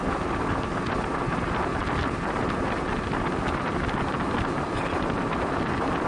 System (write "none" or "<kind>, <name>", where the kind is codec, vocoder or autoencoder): none